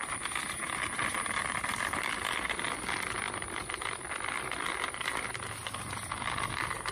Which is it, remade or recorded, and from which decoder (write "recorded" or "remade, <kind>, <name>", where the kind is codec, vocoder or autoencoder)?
recorded